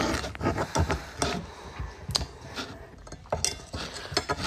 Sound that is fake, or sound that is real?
real